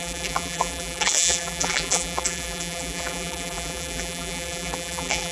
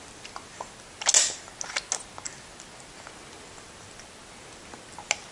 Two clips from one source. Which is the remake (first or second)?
first